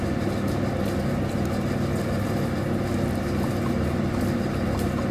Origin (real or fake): real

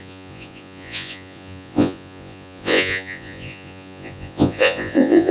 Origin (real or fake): fake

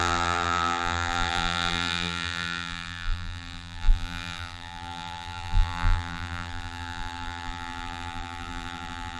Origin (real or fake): fake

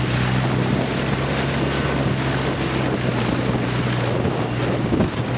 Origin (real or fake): real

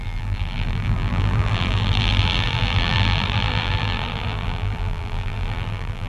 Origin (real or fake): fake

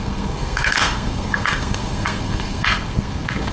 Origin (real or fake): fake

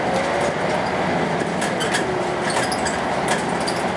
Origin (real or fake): real